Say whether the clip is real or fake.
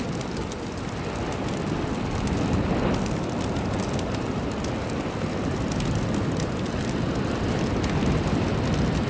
real